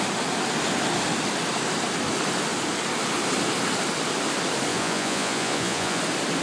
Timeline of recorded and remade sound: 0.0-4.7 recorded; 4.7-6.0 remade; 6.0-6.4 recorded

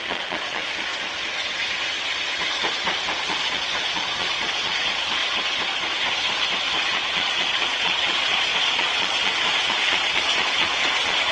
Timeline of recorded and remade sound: 0.0-0.9 remade; 0.9-3.2 recorded; 3.2-5.2 remade; 5.2-6.9 recorded; 6.9-11.3 remade

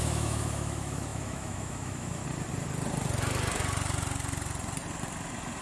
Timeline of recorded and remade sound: 0.0-2.2 remade; 2.2-5.6 recorded